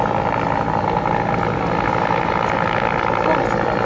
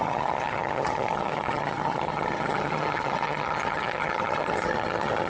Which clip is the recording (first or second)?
first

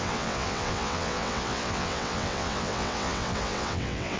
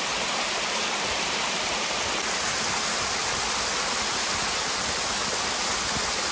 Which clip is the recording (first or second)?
second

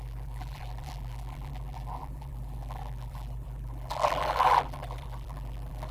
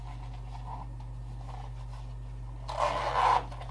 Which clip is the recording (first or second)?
second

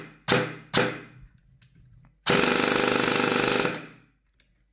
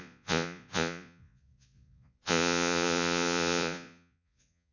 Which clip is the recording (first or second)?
first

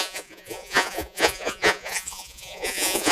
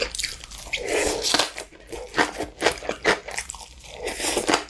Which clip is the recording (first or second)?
second